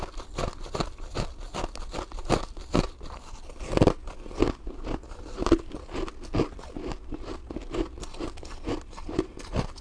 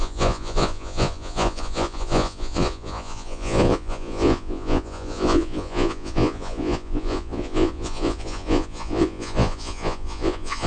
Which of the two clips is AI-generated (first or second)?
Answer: second